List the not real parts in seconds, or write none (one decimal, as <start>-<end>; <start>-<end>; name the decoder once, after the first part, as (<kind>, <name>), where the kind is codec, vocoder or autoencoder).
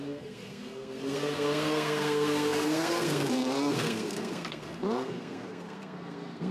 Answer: 0.0-6.5 (codec, SNAC)